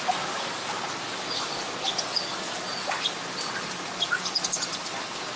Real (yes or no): yes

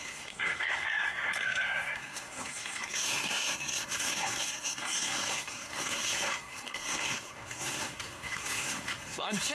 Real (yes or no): no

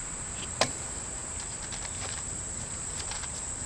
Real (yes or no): no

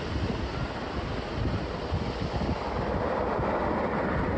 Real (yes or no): yes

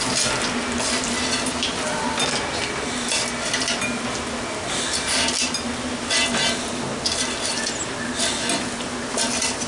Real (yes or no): yes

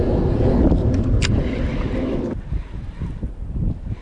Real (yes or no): yes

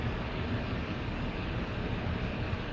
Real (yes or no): no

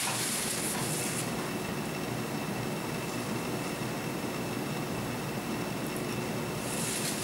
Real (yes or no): yes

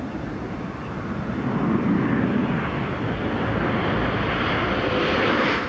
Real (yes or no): yes